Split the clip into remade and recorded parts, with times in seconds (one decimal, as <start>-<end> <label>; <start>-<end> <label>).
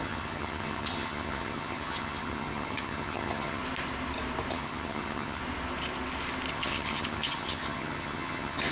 0.0-3.6 remade; 3.6-4.5 recorded; 4.5-5.4 remade; 5.4-6.5 recorded; 6.5-8.7 remade